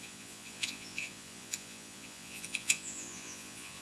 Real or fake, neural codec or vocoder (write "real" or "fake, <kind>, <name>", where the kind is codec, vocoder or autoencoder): fake, vocoder, Vocos